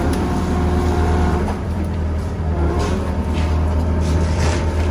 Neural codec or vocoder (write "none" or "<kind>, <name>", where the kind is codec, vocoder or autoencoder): vocoder, BigVGAN v2